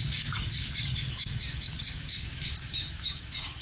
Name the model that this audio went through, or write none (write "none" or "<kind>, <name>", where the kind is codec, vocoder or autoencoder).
codec, DAC